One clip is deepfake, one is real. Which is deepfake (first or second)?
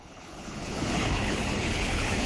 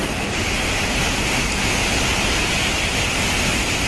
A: first